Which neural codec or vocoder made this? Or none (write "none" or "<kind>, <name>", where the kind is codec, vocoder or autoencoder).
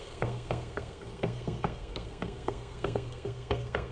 codec, SNAC